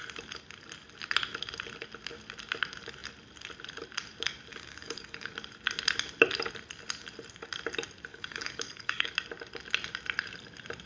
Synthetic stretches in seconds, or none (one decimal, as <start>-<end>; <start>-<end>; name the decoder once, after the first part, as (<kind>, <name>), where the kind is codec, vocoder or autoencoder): 4.5-5.3 (codec, DAC); 8.1-9.1